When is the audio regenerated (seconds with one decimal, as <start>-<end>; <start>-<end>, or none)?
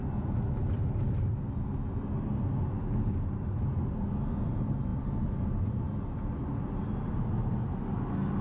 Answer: none